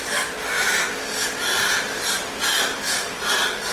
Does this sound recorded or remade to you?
recorded